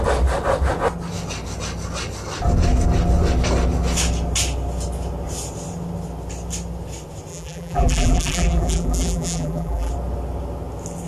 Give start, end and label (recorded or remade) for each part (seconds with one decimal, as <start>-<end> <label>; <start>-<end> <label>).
0.0-7.3 recorded; 7.3-9.9 remade; 9.9-11.1 recorded

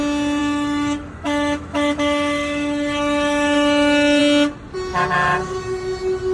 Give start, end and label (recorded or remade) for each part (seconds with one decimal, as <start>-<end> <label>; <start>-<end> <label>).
0.0-0.4 recorded; 0.4-4.2 remade; 4.2-4.9 recorded; 4.9-5.6 remade; 5.6-6.3 recorded

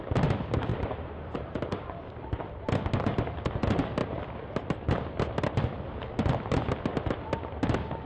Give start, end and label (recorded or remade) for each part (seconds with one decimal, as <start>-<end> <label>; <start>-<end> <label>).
0.0-0.7 recorded; 0.7-2.6 remade; 2.6-8.1 recorded

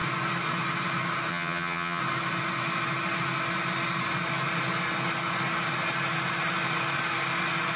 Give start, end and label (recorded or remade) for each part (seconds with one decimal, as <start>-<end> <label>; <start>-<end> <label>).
0.0-1.3 recorded; 1.3-2.0 remade; 2.0-7.8 recorded